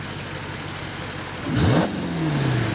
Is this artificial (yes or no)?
no